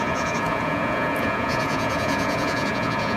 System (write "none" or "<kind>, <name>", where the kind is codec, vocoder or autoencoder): vocoder, Vocos